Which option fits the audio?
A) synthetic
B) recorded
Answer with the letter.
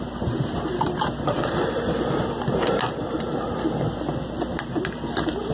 B